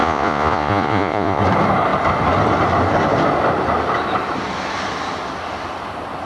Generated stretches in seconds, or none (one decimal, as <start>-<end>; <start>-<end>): 0.0-1.4